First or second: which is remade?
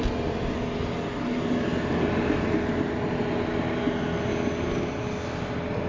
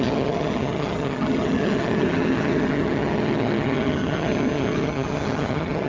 second